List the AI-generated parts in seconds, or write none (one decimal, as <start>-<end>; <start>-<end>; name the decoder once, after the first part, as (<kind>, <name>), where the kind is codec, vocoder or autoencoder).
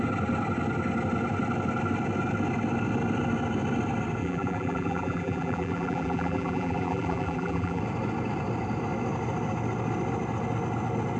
4.2-7.8 (vocoder, BigVGAN v2)